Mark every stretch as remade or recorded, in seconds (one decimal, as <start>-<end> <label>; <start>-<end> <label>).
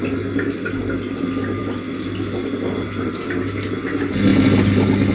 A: 0.0-5.1 recorded